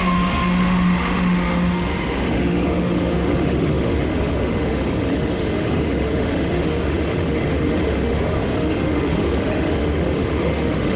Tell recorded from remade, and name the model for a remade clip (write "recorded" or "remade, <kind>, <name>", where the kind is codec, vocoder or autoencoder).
remade, autoencoder, DAC-VAE